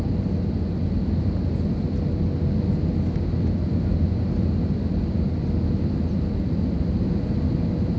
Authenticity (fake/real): real